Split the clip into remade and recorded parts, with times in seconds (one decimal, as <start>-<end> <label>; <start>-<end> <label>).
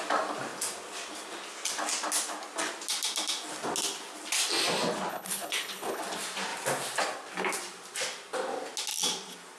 0.0-5.1 recorded; 5.1-6.0 remade; 6.0-9.6 recorded